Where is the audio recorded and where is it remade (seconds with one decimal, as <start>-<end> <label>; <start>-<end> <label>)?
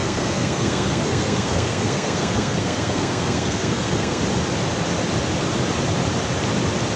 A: 0.0-4.2 remade; 4.2-7.0 recorded